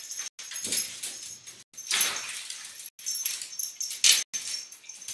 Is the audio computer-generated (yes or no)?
no